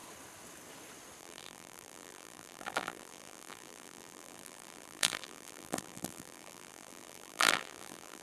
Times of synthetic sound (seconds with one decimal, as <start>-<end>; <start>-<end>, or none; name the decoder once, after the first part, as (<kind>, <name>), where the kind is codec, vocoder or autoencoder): 1.2-8.2 (vocoder, BigVGAN v2)